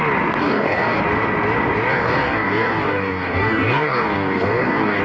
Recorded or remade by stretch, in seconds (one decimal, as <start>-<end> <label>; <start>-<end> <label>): 0.0-0.4 recorded; 0.4-1.0 remade; 1.0-1.9 recorded; 1.9-5.0 remade